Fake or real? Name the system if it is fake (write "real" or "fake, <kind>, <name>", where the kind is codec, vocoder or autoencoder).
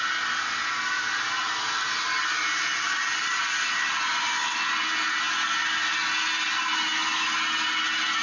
real